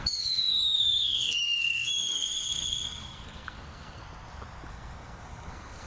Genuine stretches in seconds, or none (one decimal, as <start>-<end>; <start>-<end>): 4.0-4.7